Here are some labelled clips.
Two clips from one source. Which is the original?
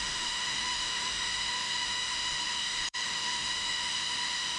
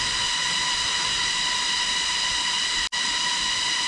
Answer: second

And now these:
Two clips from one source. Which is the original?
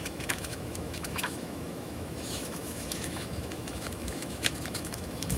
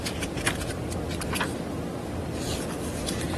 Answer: second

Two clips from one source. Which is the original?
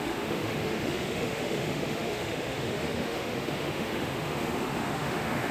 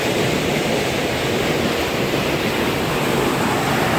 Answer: second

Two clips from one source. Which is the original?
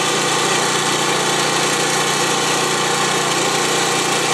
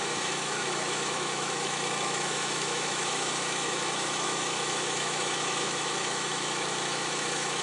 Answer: first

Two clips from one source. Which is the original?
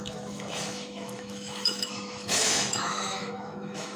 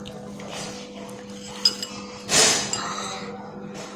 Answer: second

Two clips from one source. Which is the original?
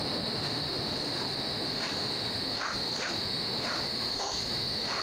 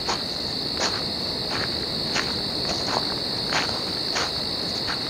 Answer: second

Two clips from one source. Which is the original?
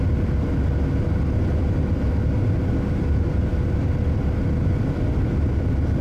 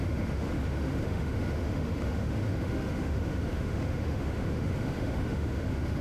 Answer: first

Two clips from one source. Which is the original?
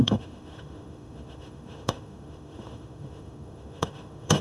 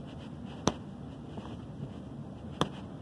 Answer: second